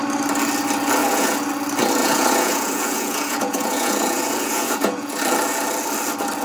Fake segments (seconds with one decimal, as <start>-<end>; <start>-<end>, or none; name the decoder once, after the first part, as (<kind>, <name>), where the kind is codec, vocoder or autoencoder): 1.0-1.5 (vocoder, Vocos); 2.0-5.2